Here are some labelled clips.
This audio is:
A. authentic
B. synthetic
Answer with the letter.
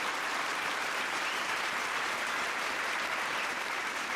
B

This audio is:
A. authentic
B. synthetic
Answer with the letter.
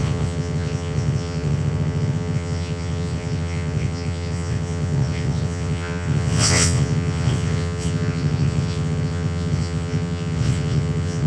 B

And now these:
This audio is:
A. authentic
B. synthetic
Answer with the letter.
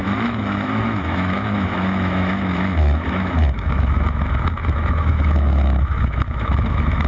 B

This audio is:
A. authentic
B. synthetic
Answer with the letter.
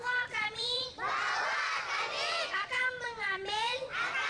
B